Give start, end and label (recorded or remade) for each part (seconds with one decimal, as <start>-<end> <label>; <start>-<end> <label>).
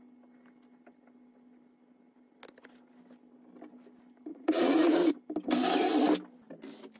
0.0-4.3 recorded; 4.3-5.1 remade; 5.1-7.0 recorded